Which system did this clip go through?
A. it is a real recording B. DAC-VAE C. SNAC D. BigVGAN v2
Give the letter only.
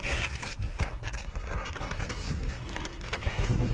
C